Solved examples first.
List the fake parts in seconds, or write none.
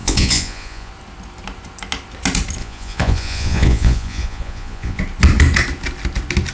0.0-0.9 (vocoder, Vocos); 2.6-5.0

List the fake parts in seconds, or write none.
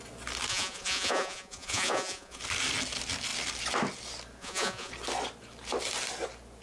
0.5-2.4 (vocoder, Vocos); 4.4-4.9